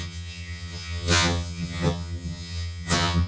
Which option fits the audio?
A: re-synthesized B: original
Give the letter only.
A